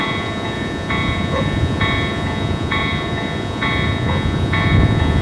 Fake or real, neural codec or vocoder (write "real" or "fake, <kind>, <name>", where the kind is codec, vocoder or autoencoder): fake, vocoder, Vocos